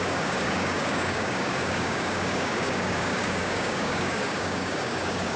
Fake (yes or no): yes